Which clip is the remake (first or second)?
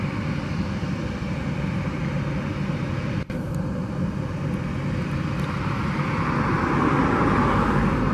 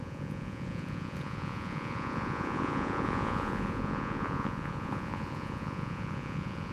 second